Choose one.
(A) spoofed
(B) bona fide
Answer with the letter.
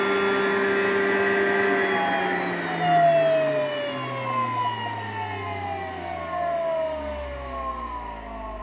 B